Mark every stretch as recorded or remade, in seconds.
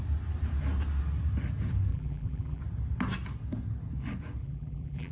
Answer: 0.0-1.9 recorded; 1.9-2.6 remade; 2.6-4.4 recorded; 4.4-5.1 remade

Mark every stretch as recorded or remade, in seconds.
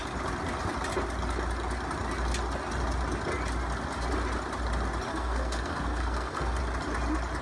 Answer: 0.0-5.1 recorded; 5.1-6.6 remade; 6.6-7.4 recorded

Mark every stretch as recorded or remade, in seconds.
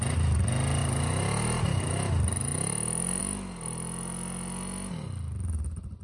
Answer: 0.0-6.0 recorded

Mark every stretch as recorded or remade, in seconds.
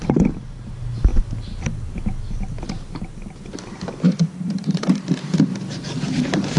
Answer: 0.0-1.1 remade; 1.1-4.4 recorded; 4.4-6.6 remade